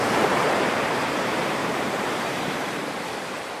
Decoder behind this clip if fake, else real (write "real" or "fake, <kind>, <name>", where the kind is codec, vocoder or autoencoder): fake, vocoder, BigVGAN v2